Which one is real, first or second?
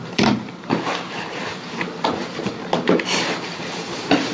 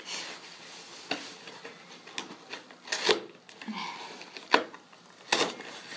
second